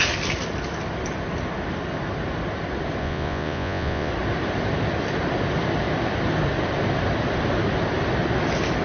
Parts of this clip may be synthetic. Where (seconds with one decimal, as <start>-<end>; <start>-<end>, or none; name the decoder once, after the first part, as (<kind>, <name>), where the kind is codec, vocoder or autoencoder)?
3.0-4.1 (vocoder, Vocos)